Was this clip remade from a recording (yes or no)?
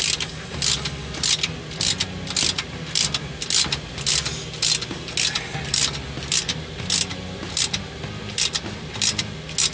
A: no